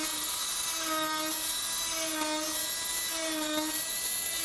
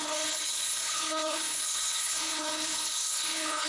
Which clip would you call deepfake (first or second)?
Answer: second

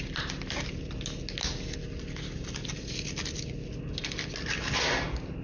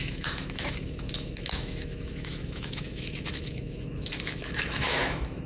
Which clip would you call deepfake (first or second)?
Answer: second